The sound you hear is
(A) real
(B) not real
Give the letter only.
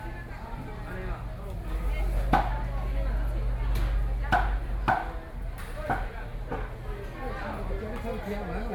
A